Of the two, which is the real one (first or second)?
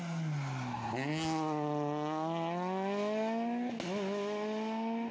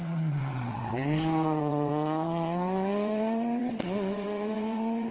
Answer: first